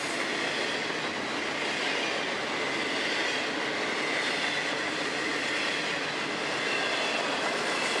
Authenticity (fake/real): real